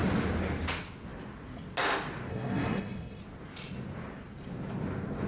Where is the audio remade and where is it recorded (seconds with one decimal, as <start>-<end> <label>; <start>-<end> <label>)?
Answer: 0.0-2.3 recorded; 2.3-3.2 remade; 3.2-5.3 recorded